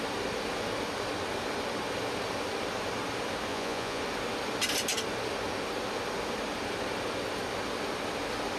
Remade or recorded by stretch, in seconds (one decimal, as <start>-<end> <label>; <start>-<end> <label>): 0.0-3.5 recorded; 3.5-4.0 remade; 4.0-8.6 recorded